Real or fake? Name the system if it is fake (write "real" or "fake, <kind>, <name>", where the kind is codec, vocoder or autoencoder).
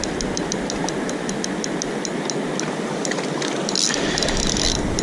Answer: real